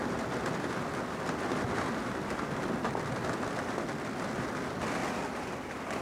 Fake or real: real